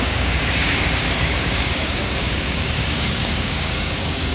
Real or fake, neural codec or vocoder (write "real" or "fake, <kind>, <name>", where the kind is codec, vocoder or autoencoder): fake, codec, DAC